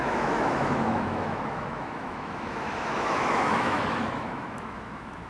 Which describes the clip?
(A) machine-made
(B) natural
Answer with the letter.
A